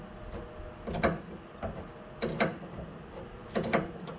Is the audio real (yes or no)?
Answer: yes